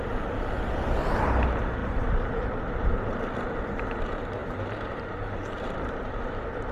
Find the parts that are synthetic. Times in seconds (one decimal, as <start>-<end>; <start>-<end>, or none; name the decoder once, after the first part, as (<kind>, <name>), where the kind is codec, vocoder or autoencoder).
1.8-2.9 (vocoder, BigVGAN v2); 4.4-6.7